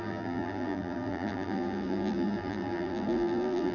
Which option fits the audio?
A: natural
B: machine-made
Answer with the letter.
B